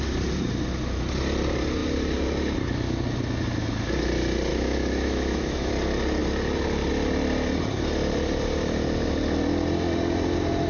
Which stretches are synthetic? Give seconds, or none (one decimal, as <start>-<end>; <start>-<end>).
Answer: 4.5-5.7